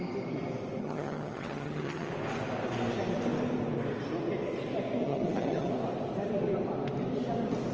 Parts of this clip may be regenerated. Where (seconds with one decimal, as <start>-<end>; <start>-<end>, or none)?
0.8-2.1; 5.0-5.7